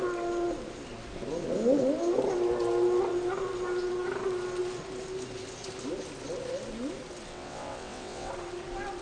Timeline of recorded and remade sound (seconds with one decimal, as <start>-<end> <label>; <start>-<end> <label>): 0.0-7.3 recorded; 7.3-8.3 remade; 8.3-9.0 recorded